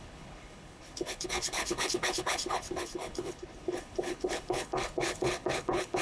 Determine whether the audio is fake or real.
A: fake